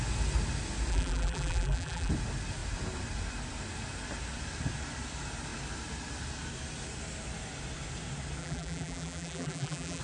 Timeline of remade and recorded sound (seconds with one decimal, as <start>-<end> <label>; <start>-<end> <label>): 0.0-0.9 recorded; 0.9-2.1 remade; 2.1-8.4 recorded; 8.4-10.0 remade